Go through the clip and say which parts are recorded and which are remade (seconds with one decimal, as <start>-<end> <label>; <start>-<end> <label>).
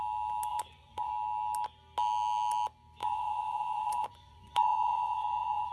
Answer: 0.0-0.5 recorded; 0.5-1.1 remade; 1.1-3.0 recorded; 3.0-5.7 remade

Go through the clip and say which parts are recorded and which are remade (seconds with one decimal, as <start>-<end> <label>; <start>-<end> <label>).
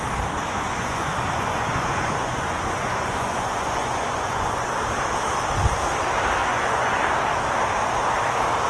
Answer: 0.0-0.4 recorded; 0.4-4.7 remade; 4.7-6.4 recorded; 6.4-7.0 remade; 7.0-8.7 recorded